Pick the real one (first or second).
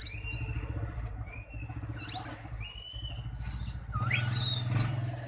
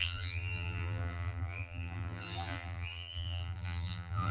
first